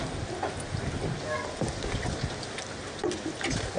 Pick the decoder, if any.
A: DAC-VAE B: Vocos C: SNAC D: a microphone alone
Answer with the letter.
D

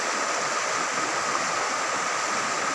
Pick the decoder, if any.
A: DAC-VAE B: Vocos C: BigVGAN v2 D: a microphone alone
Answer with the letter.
D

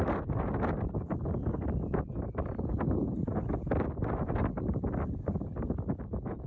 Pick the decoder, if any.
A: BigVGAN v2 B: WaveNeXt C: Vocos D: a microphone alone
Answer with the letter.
D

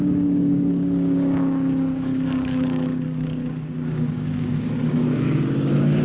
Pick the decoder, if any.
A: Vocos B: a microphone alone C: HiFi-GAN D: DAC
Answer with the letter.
D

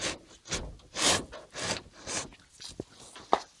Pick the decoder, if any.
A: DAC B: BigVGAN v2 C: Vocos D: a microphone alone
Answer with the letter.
D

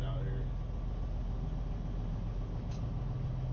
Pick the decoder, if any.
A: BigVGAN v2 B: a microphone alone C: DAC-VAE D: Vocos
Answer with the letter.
B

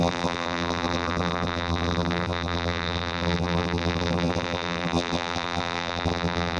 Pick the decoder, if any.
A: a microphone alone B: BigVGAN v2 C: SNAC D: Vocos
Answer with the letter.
B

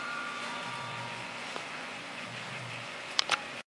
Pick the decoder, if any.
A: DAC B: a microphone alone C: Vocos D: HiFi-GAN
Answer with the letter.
C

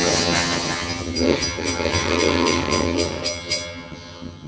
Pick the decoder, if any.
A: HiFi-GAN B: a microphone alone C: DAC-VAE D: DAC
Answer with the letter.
A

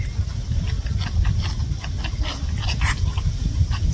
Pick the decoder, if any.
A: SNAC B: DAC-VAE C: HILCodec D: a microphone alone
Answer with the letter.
D